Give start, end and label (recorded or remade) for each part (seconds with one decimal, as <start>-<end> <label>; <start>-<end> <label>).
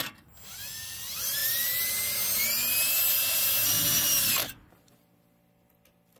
0.0-6.2 recorded